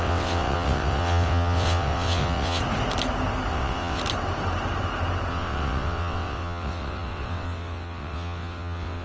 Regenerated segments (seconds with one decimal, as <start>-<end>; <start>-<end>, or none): 0.0-2.6; 3.5-4.0; 5.3-9.0